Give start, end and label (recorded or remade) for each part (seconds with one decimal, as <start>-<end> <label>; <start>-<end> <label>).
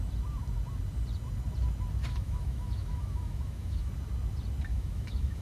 0.0-2.0 recorded; 2.0-3.9 remade; 3.9-4.7 recorded; 4.7-5.4 remade